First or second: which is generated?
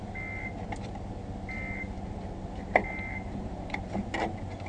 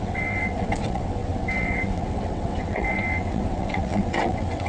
second